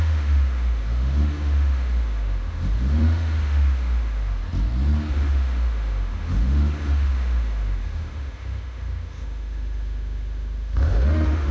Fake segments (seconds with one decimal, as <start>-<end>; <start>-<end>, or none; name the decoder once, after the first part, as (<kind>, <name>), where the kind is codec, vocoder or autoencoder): 0.0-4.4 (autoencoder, DAC-VAE); 5.1-11.5